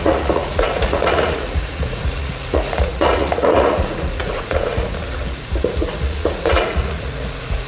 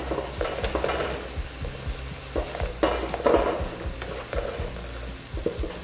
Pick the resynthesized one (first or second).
first